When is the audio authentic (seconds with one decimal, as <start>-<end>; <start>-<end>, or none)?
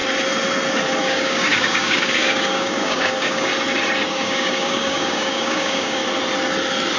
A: 0.0-1.0; 3.5-4.1; 6.0-7.0